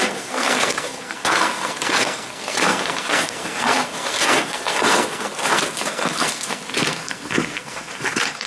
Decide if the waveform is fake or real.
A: fake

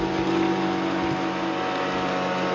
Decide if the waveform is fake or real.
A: real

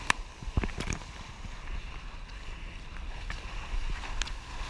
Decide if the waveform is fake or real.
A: real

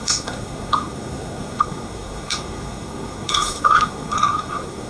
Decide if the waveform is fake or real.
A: fake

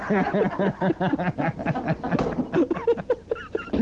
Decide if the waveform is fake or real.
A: real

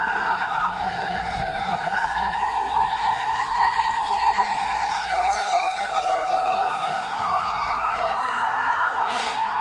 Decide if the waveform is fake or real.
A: fake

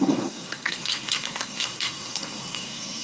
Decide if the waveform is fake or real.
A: fake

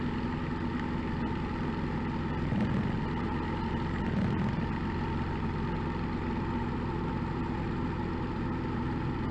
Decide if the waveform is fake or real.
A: real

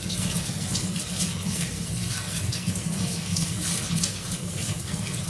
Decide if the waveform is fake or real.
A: fake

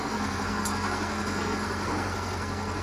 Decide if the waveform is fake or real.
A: fake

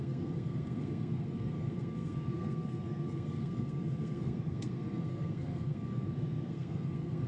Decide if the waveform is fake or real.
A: fake